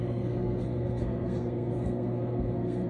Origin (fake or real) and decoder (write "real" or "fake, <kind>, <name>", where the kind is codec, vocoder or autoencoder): fake, codec, SNAC